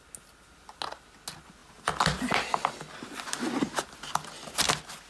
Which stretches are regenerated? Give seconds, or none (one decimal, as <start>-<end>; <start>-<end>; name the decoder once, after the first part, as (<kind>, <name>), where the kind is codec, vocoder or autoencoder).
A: none